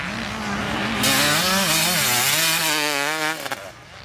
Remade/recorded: recorded